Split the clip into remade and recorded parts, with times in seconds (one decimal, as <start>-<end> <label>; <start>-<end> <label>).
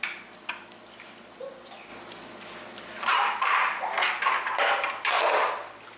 0.0-6.0 recorded